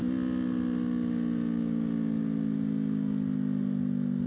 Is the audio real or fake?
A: real